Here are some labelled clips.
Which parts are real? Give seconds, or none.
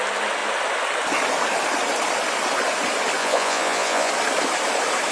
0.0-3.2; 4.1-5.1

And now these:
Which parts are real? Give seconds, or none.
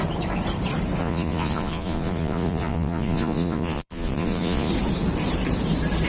0.0-1.0; 4.7-6.1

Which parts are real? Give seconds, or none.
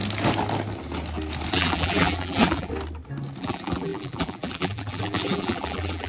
0.0-1.5; 2.7-3.4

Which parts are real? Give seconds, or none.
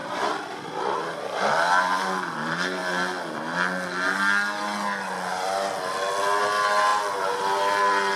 2.8-6.4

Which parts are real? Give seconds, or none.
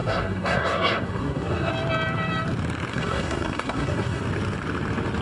1.7-2.9; 4.2-5.2